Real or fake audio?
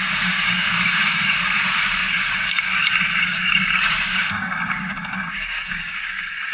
fake